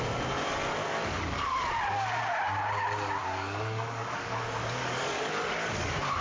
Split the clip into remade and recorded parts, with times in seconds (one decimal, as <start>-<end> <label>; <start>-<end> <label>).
0.0-0.8 recorded; 0.8-1.7 remade; 1.7-3.2 recorded; 3.2-6.2 remade